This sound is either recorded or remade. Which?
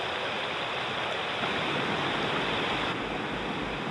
recorded